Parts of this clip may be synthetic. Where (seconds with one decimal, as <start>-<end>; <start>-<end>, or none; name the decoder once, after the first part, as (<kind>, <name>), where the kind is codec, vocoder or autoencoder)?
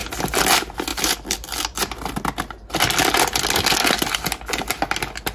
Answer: none